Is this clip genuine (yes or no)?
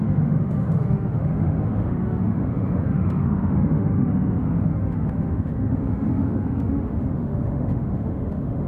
no